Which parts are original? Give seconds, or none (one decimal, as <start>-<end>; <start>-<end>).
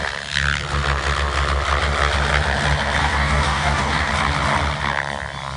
0.0-3.0; 4.1-5.6